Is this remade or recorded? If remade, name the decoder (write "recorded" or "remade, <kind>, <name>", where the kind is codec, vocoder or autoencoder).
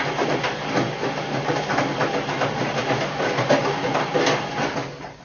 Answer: recorded